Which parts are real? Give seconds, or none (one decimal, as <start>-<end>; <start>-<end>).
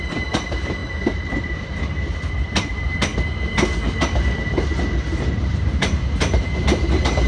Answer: 0.8-1.4; 3.1-5.5